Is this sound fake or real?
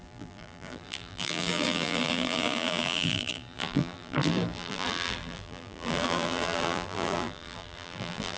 fake